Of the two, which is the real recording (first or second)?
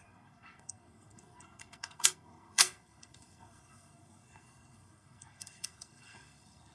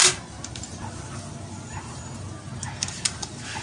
second